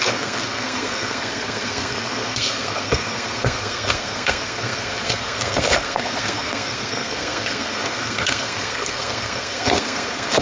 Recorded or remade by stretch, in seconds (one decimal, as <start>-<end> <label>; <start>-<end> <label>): 0.0-10.4 remade